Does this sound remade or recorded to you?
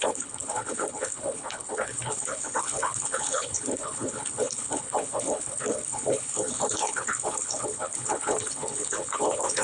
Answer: remade